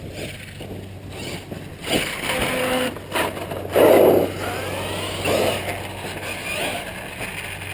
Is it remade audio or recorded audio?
recorded